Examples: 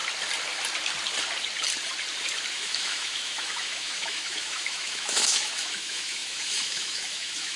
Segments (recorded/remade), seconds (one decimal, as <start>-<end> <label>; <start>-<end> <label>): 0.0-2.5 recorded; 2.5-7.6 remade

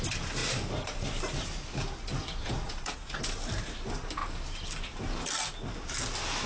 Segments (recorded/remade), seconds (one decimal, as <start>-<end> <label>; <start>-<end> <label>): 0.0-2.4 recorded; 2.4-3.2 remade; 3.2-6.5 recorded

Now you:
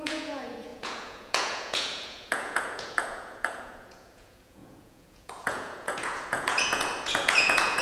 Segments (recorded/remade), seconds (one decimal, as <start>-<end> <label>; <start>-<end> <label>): 0.0-7.8 remade

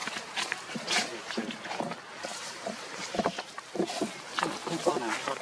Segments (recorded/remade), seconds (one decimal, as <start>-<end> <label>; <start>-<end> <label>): 0.0-1.8 remade; 1.8-2.3 recorded; 2.3-3.1 remade; 3.1-5.4 recorded